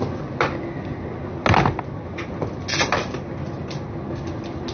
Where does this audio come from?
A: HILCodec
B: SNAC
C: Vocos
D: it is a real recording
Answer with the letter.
D